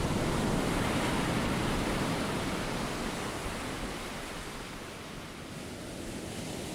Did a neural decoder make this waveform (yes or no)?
yes